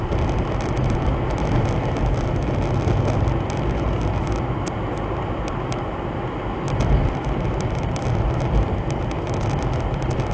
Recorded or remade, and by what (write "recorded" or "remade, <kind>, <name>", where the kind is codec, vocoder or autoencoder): recorded